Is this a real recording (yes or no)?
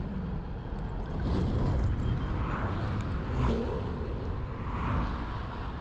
yes